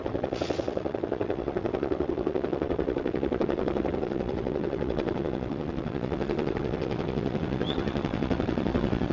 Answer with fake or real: fake